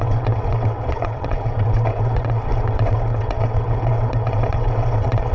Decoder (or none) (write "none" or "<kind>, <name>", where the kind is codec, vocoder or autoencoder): vocoder, WaveNeXt